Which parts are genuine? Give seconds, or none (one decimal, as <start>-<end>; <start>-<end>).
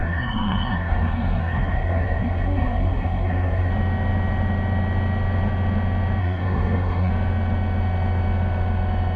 3.7-6.2; 7.1-9.2